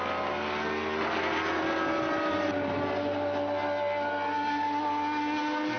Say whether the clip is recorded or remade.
recorded